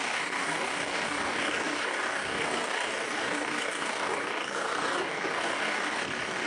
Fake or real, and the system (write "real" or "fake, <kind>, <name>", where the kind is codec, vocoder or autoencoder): fake, codec, DAC